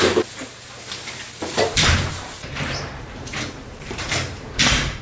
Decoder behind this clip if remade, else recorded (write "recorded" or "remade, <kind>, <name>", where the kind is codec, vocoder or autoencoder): remade, vocoder, BigVGAN v2